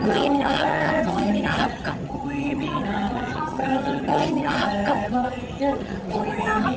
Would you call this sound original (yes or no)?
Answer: no